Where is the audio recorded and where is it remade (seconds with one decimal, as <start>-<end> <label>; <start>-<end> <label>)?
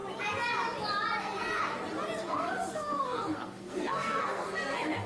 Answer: 0.0-1.2 recorded; 1.2-1.6 remade; 1.6-2.2 recorded; 2.2-5.1 remade